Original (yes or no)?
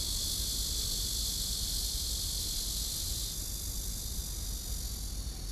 yes